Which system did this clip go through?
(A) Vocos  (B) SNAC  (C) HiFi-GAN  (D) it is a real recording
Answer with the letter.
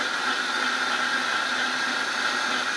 D